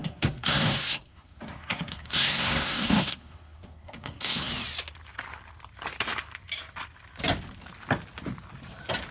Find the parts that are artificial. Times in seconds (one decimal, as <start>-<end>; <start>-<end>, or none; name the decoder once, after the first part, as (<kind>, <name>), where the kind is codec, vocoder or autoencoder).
0.0-4.5 (codec, SNAC)